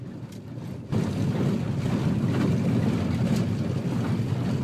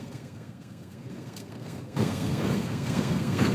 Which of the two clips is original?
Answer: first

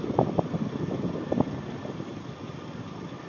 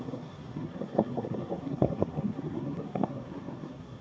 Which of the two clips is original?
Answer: first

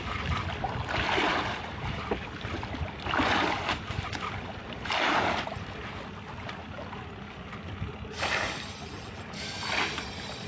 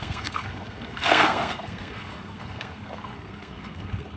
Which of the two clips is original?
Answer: first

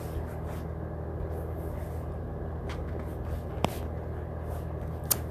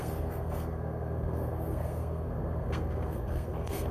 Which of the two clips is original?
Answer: first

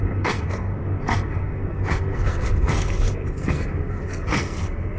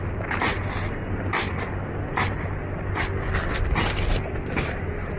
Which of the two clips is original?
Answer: second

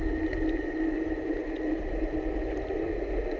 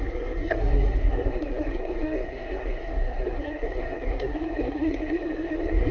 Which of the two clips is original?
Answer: first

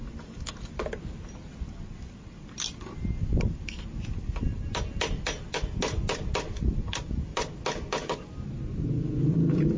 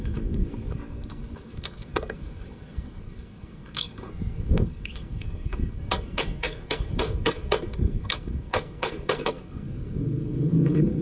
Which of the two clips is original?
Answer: first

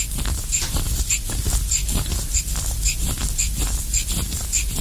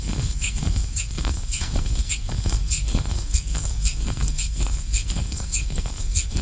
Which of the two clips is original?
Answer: first